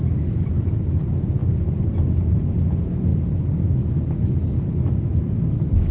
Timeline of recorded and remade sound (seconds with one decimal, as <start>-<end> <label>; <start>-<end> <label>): 0.0-1.4 remade; 1.4-2.3 recorded; 2.3-5.9 remade